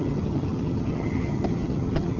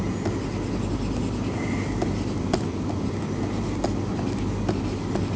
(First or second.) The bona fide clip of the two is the second